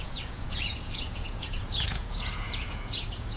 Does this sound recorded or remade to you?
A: remade